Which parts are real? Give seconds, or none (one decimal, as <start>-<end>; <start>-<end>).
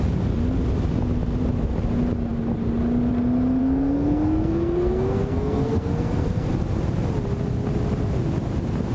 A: 0.0-3.6; 6.5-8.9